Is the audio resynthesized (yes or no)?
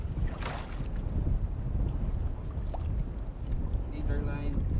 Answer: no